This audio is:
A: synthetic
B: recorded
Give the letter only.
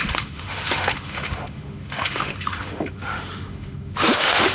A